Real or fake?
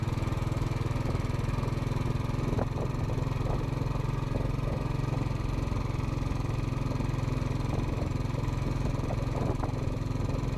real